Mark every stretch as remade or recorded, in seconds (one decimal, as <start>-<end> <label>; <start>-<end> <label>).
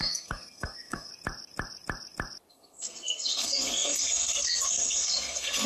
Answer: 0.0-1.1 remade; 1.1-2.5 recorded; 2.5-5.7 remade